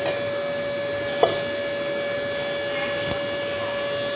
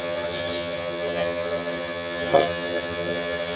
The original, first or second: first